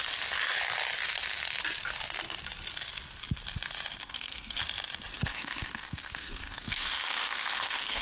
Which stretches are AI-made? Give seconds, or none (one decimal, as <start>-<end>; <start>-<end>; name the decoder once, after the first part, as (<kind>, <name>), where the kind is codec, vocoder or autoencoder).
4.0-4.6 (codec, SNAC); 5.1-8.0